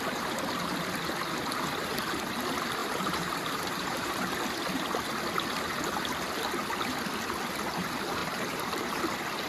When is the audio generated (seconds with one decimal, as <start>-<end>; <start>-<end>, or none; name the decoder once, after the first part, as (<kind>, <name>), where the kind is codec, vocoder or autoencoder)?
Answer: 2.8-4.1 (vocoder, BigVGAN v2); 8.2-9.0

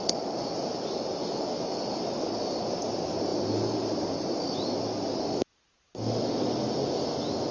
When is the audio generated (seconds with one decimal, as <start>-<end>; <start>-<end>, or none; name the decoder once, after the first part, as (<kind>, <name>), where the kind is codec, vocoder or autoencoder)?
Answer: none